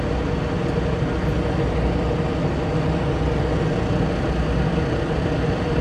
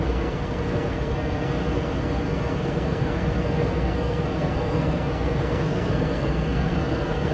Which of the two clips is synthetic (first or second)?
second